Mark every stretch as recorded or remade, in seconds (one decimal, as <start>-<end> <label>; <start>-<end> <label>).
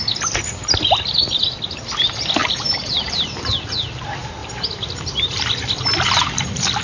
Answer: 0.0-2.4 recorded; 2.4-3.7 remade; 3.7-4.4 recorded; 4.4-5.4 remade; 5.4-6.8 recorded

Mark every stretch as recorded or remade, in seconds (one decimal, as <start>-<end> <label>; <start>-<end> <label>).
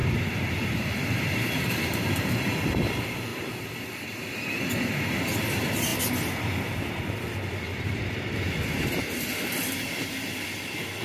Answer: 0.0-2.3 remade; 2.3-3.3 recorded; 3.3-4.1 remade; 4.1-7.7 recorded; 7.7-8.9 remade; 8.9-11.0 recorded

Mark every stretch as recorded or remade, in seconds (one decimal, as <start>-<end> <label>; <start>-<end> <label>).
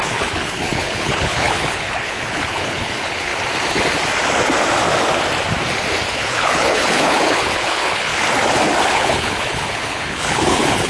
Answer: 0.0-3.3 remade; 3.3-6.1 recorded; 6.1-8.1 remade; 8.1-8.9 recorded; 8.9-10.9 remade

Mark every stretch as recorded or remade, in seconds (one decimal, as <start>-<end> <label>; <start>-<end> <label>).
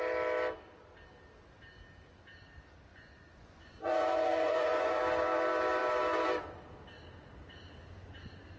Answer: 0.0-2.9 recorded; 2.9-5.0 remade; 5.0-8.6 recorded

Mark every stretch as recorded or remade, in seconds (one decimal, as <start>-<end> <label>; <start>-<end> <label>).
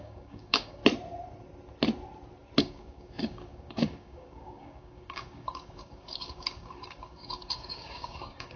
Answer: 0.0-0.8 remade; 0.8-2.6 recorded; 2.6-8.6 remade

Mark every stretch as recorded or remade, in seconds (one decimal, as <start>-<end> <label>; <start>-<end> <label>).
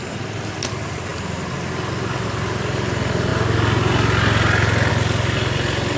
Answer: 0.0-6.0 recorded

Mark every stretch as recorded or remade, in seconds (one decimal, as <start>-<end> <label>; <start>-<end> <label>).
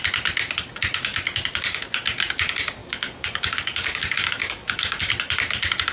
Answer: 0.0-2.8 recorded; 2.8-5.1 remade; 5.1-5.9 recorded